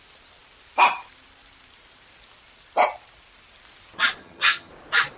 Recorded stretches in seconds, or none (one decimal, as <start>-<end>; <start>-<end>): 0.0-4.2; 4.7-5.2